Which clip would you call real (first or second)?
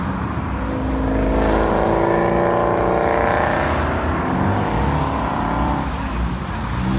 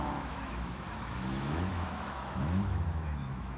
first